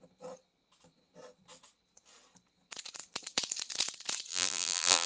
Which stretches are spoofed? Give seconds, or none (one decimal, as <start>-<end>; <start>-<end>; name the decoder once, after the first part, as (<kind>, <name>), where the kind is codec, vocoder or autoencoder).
4.3-5.1 (vocoder, BigVGAN v2)